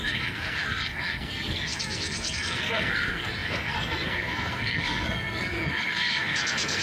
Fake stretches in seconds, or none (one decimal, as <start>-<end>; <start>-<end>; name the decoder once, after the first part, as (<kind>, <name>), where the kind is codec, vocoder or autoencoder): 0.0-6.8 (codec, SNAC)